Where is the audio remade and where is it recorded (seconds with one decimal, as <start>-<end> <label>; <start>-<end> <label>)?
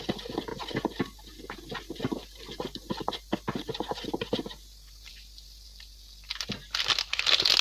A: 0.0-7.6 recorded